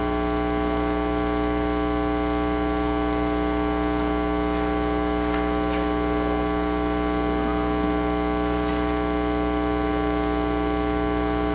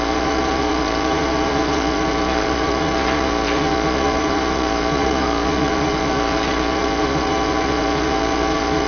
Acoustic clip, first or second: first